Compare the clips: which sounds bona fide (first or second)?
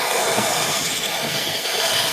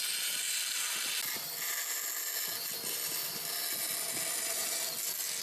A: second